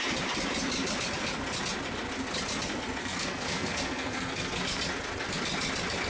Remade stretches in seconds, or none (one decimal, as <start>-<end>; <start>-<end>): 3.0-4.8

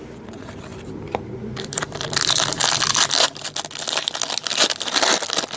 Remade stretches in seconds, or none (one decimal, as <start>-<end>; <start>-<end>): none

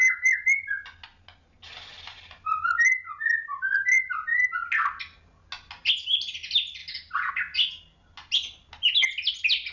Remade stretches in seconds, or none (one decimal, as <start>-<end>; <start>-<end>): none

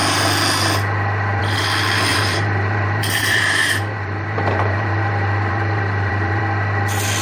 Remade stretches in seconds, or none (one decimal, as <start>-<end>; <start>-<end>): 2.1-6.4